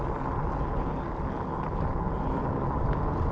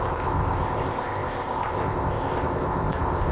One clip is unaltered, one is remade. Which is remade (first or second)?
second